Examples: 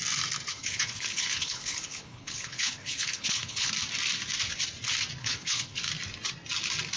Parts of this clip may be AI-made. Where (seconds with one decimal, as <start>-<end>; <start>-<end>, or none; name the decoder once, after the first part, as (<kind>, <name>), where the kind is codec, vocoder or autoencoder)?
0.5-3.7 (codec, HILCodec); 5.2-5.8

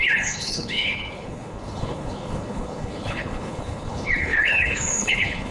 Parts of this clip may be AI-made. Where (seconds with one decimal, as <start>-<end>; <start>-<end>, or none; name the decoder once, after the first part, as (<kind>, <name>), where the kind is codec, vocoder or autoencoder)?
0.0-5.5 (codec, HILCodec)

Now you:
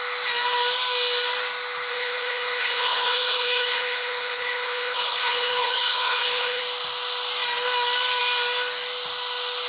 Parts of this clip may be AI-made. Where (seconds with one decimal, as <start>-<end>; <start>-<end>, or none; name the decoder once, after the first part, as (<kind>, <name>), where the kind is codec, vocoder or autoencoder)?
1.9-6.6 (codec, HILCodec)

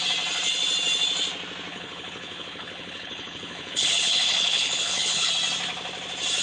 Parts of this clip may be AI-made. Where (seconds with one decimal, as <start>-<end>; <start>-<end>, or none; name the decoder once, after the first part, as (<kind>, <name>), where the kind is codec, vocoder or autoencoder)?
1.7-5.3 (codec, HILCodec)

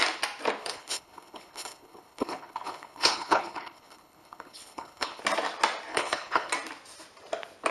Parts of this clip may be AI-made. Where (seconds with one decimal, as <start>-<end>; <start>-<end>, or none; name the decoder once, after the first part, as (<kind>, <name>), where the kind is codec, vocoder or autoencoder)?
0.6-5.2 (codec, HILCodec); 5.9-6.5